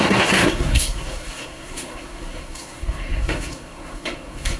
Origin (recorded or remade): remade